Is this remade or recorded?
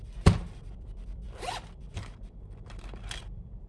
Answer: remade